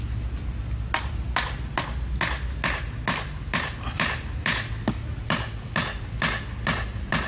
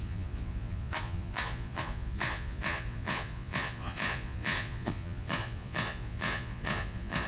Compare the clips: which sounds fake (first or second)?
second